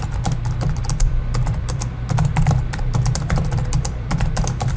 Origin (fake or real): fake